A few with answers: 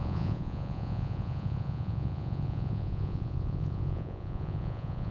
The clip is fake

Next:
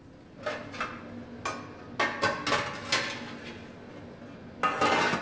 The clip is real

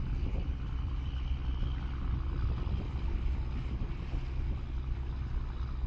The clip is real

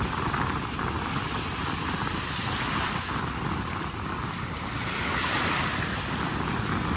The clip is real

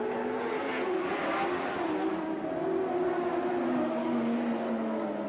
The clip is real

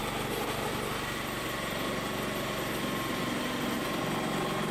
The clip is real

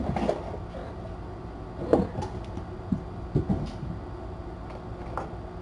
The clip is real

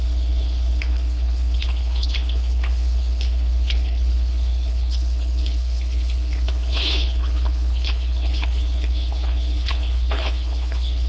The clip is fake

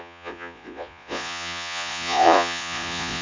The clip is fake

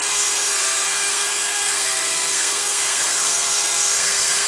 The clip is fake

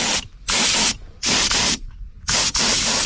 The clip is fake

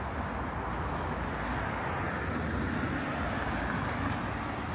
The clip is real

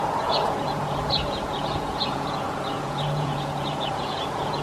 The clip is fake